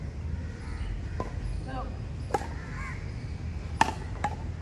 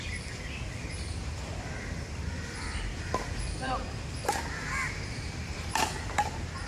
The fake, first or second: second